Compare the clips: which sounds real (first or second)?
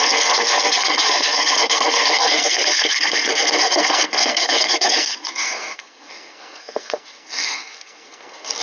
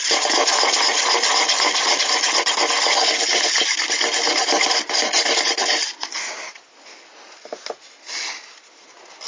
second